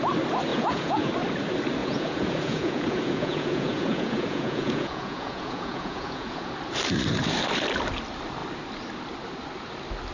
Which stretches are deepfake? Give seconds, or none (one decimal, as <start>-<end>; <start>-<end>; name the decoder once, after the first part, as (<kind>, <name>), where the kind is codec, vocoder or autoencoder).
0.5-1.1 (vocoder, Vocos); 1.8-6.5